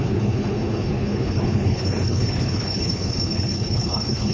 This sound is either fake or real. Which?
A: fake